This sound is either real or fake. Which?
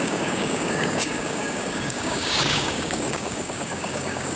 fake